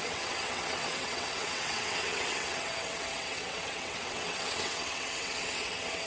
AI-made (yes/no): yes